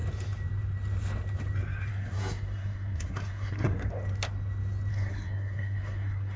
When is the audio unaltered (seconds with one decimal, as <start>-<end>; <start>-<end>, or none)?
0.0-1.9; 3.9-4.9